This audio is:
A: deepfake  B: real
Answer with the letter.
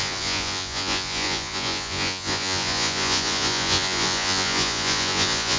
A